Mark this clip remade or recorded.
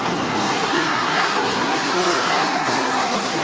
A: remade